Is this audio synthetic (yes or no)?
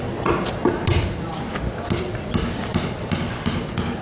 no